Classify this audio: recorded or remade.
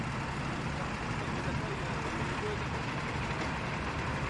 recorded